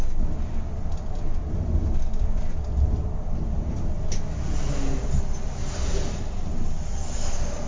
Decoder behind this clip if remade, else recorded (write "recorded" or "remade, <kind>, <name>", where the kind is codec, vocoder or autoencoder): recorded